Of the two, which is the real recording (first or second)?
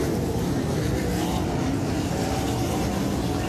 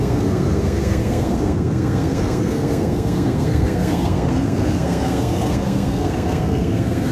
first